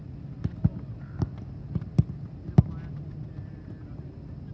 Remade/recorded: recorded